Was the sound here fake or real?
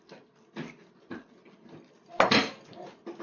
real